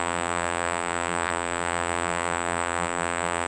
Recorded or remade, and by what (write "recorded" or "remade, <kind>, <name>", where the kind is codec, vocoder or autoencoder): remade, vocoder, BigVGAN v2